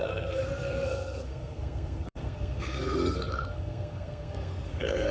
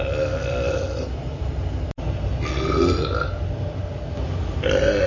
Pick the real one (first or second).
second